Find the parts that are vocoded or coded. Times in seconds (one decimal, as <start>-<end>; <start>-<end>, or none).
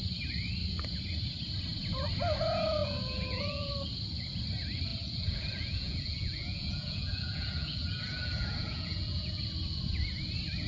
2.8-3.7; 4.9-9.4